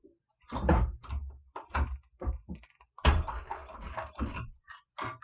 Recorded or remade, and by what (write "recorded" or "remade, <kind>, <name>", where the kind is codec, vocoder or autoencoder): recorded